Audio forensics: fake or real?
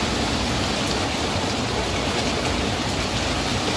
real